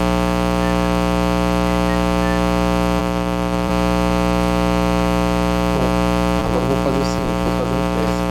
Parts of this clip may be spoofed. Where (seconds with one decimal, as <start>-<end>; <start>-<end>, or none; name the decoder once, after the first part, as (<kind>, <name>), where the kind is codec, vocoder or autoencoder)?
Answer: 3.0-3.7 (vocoder, BigVGAN v2); 6.4-8.3